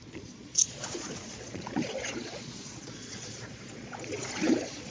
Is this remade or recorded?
remade